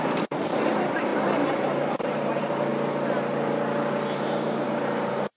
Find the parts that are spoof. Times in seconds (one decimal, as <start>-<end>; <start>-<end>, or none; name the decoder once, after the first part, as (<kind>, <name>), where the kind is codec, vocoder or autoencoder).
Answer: 0.0-2.7 (vocoder, BigVGAN v2); 4.2-5.4